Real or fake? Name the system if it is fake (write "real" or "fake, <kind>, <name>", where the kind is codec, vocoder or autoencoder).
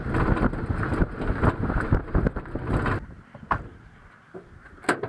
real